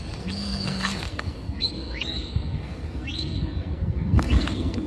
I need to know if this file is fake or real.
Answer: fake